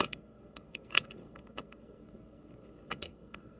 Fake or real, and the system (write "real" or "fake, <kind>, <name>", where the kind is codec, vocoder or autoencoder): fake, codec, SNAC